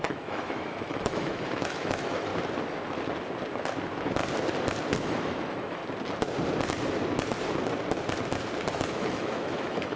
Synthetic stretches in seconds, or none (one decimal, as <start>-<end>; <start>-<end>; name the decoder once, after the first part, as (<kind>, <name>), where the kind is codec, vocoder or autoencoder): 0.0-2.3 (autoencoder, DAC-VAE); 5.0-5.8; 8.7-10.0